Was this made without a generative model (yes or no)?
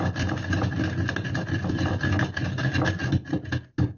yes